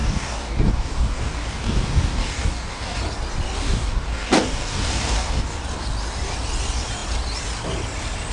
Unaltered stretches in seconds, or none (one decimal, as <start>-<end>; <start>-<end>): 3.0-3.6; 5.6-8.3